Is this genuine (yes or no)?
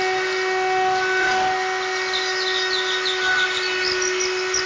yes